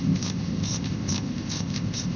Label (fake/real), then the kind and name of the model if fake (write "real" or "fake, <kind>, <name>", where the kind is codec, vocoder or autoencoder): fake, codec, ZipCodec